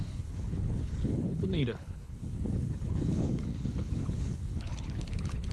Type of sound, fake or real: fake